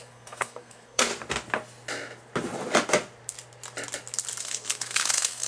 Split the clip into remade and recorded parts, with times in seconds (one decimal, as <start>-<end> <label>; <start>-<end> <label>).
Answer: 0.0-1.1 remade; 1.1-4.4 recorded; 4.4-5.5 remade